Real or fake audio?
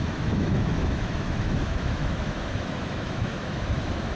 fake